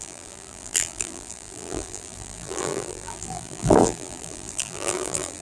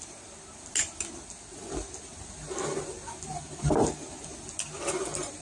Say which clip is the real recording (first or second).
second